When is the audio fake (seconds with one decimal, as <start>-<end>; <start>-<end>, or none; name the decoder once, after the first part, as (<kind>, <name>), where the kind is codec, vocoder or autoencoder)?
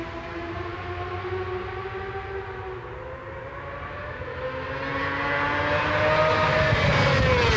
none